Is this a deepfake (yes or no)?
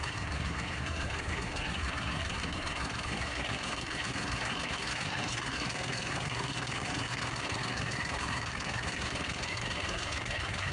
yes